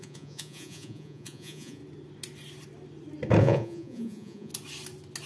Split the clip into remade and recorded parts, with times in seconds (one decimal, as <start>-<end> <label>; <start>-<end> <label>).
0.0-1.8 remade; 1.8-3.4 recorded; 3.4-4.5 remade; 4.5-5.3 recorded